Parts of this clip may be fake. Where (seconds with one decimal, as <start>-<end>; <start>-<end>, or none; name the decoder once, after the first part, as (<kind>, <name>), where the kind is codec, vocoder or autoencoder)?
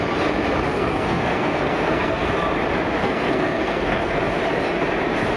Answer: 0.7-2.3 (codec, SNAC); 3.0-4.2